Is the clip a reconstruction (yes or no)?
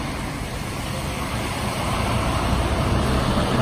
yes